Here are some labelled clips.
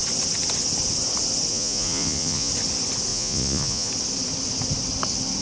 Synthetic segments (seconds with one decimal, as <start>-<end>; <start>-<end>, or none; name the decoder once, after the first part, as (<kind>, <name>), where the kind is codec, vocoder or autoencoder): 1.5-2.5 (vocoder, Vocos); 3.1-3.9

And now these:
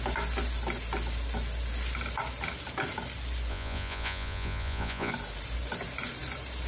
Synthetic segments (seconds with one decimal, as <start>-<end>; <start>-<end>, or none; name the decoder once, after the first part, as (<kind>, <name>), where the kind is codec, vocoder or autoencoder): 3.5-5.1 (vocoder, Vocos)

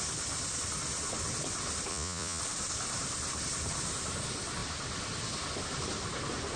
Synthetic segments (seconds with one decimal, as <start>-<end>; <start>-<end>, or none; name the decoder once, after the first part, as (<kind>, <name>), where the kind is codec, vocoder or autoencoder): 1.9-2.4 (vocoder, Vocos)

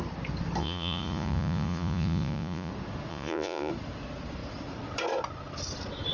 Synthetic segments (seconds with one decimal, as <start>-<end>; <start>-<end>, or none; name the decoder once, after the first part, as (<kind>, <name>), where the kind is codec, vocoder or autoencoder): 0.6-2.7 (vocoder, Vocos); 3.1-3.7